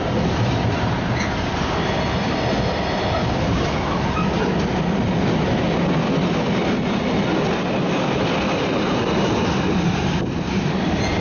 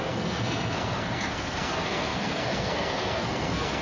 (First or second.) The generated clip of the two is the second